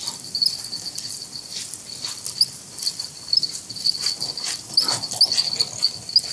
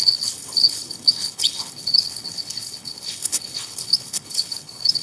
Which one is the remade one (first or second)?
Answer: second